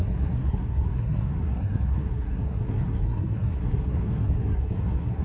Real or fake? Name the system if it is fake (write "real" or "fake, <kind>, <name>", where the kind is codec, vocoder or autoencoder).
fake, codec, SNAC